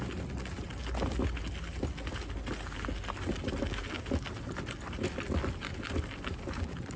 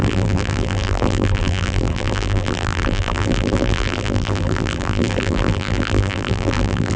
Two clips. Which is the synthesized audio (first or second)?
second